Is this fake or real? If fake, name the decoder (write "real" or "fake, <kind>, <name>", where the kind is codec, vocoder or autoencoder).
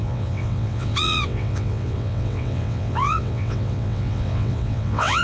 fake, vocoder, WaveNeXt